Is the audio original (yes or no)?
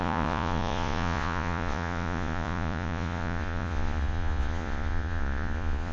no